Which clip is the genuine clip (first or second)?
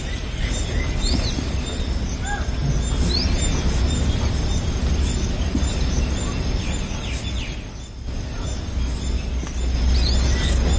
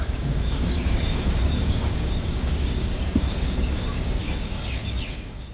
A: first